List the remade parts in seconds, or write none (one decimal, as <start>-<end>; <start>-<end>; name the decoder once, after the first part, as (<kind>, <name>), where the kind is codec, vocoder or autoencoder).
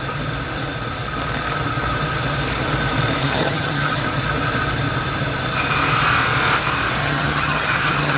3.2-4.0 (vocoder, HiFi-GAN); 7.0-8.2